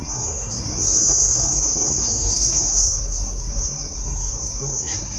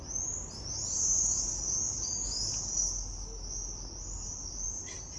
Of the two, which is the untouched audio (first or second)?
second